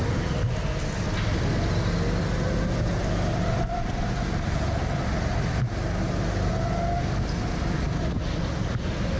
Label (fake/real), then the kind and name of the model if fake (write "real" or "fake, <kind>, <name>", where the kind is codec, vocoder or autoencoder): real